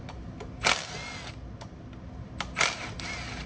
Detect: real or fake real